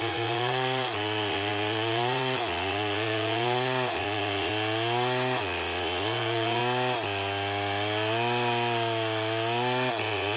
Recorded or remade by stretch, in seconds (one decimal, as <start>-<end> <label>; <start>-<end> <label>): 0.0-4.5 remade; 4.5-5.4 recorded; 5.4-6.6 remade; 6.6-9.9 recorded; 9.9-10.4 remade